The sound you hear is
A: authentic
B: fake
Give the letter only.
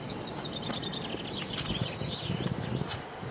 A